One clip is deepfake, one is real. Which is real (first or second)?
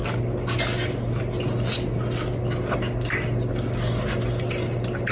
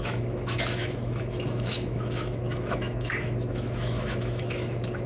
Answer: first